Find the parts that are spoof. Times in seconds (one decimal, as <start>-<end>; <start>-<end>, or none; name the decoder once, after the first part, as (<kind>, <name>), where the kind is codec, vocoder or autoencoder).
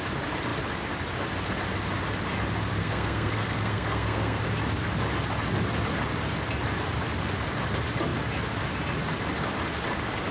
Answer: 2.8-4.4 (codec, SNAC)